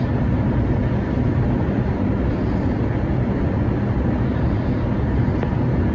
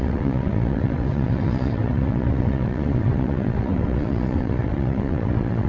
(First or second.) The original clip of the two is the first